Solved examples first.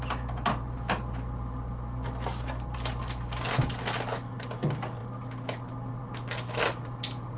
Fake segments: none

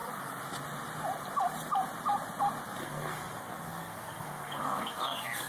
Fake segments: 2.8-5.5 (codec, SNAC)

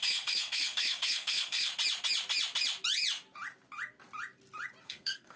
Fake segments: 0.0-1.7 (codec, SNAC); 4.8-5.4

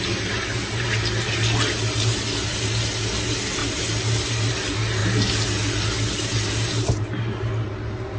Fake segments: none

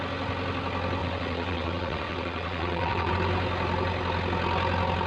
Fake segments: 1.0-3.1 (vocoder, WaveNeXt)

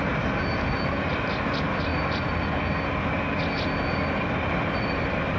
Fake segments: none